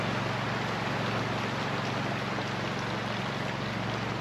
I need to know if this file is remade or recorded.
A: recorded